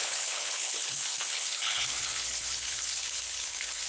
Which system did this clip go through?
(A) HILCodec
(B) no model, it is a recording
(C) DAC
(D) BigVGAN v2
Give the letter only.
A